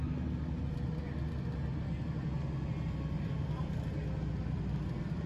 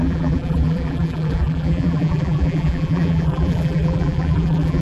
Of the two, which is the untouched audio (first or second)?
first